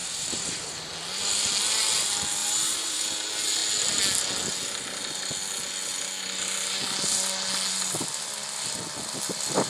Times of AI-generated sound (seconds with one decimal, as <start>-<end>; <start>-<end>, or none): 0.0-0.9; 2.4-3.0